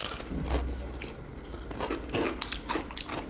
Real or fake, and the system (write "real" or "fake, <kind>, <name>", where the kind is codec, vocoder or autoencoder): real